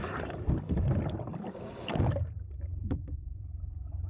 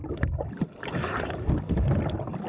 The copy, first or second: first